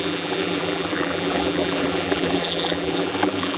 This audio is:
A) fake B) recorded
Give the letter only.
A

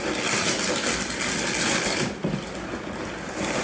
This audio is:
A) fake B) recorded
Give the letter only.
B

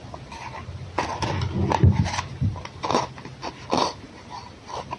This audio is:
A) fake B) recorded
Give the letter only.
B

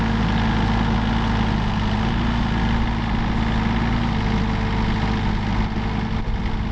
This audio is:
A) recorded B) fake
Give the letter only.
A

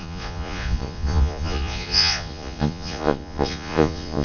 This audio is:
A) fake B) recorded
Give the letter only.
A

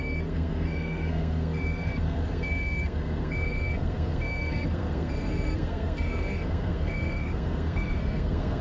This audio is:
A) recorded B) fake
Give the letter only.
B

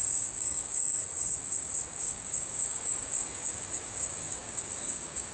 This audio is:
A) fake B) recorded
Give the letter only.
A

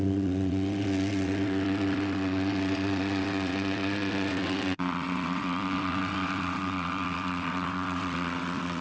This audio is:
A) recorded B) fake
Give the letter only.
B